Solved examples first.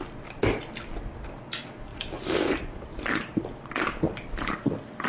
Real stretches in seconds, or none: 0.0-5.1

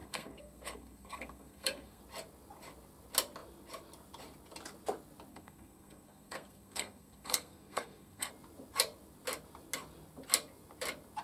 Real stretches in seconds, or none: 2.0-5.3; 8.3-11.2

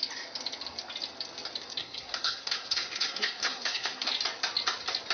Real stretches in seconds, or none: 0.0-1.8; 4.1-5.1

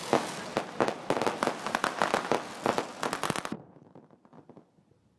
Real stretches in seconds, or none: 0.0-5.2